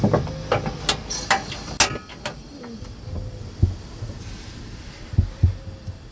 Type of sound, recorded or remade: recorded